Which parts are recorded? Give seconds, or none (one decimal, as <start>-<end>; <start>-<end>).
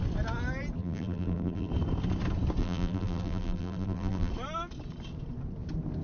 0.0-0.8; 1.7-2.6; 4.3-6.0